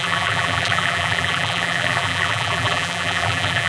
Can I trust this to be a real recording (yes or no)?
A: no